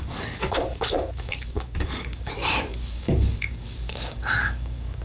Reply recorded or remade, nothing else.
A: remade